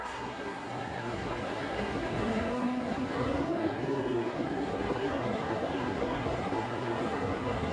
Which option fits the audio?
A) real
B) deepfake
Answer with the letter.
B